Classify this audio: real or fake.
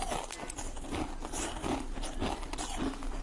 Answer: real